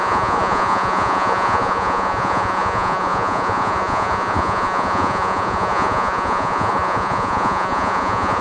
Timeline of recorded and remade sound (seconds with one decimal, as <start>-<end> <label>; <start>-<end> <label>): 0.0-8.4 remade

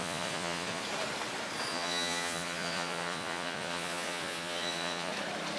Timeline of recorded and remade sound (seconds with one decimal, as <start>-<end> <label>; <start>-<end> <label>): 0.0-0.8 remade; 0.8-1.7 recorded; 1.7-5.1 remade; 5.1-5.6 recorded

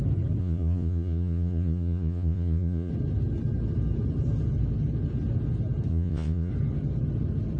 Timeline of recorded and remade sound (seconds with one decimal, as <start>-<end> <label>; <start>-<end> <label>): 0.0-0.4 recorded; 0.4-2.9 remade; 2.9-5.9 recorded; 5.9-6.5 remade; 6.5-7.6 recorded

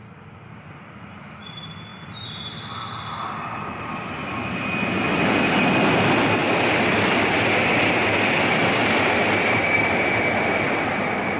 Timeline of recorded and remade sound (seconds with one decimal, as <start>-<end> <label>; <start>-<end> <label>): 0.0-11.4 recorded

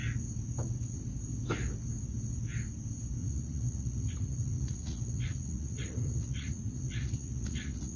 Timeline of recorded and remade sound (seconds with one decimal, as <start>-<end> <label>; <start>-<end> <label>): 0.0-3.2 recorded; 3.2-8.0 remade